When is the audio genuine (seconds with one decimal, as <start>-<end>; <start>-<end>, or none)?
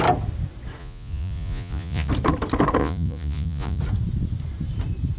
0.0-0.8; 2.1-2.8; 3.8-5.2